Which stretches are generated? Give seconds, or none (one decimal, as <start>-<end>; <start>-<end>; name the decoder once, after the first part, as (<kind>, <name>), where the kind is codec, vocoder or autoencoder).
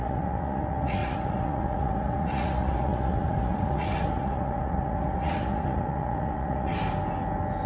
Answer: 0.0-6.7 (vocoder, Vocos)